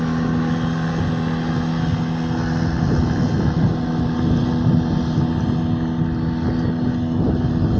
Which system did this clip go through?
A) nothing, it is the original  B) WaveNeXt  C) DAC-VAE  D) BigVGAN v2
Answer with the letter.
A